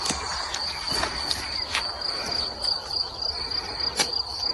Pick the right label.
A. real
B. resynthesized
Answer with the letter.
A